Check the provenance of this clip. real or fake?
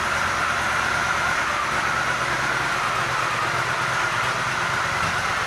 real